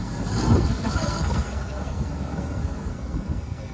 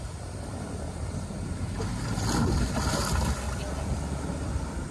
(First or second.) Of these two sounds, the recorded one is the second